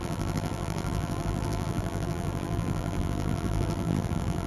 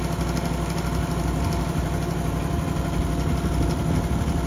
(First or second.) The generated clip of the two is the first